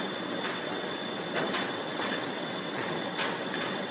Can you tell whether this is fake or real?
fake